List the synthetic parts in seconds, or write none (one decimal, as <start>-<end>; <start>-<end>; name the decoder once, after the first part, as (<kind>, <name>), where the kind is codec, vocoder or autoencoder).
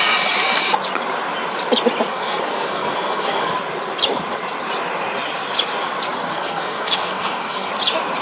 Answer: 2.1-3.5 (codec, SNAC); 6.3-7.7